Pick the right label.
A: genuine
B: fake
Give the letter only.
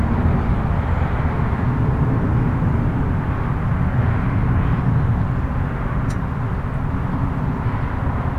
A